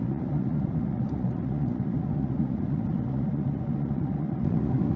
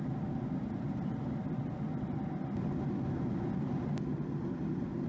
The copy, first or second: first